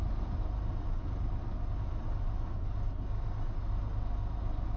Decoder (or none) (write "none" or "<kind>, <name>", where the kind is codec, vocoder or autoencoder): none